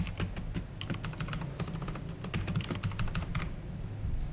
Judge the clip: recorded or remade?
recorded